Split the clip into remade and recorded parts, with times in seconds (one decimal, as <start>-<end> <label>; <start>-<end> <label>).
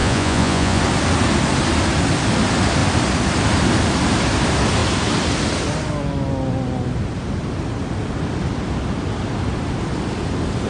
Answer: 0.0-0.8 remade; 0.8-10.7 recorded